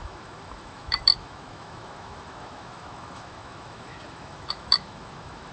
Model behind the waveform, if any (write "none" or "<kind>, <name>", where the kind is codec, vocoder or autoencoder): autoencoder, DAC-VAE